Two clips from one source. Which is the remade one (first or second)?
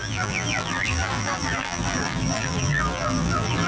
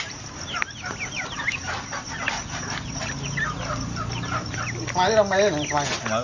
first